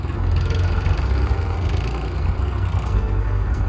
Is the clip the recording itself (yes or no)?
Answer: no